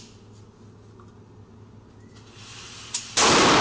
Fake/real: real